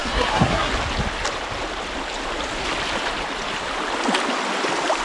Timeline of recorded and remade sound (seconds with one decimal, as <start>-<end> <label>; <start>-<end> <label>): 0.0-0.7 remade; 0.7-5.0 recorded